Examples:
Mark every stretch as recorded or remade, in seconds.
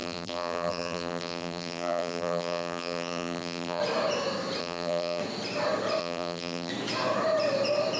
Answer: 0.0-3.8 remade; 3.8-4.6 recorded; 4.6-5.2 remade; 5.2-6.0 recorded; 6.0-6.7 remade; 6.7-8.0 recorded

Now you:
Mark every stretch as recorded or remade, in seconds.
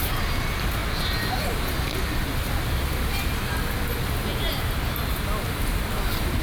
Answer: 0.0-6.4 recorded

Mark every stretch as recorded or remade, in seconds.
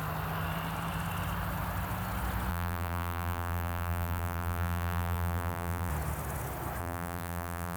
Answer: 0.0-2.5 recorded; 2.5-5.9 remade; 5.9-6.8 recorded; 6.8-7.8 remade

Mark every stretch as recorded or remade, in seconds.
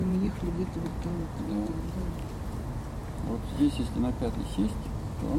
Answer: 0.0-0.5 remade; 0.5-0.9 recorded; 0.9-2.6 remade; 2.6-5.4 recorded